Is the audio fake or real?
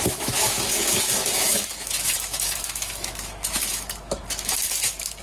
fake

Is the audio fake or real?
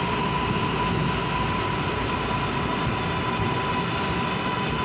real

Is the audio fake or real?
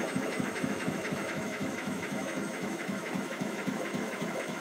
fake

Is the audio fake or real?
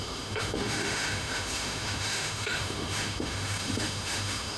fake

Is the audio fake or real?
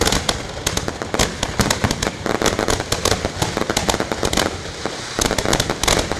real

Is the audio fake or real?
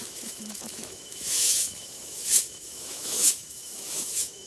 fake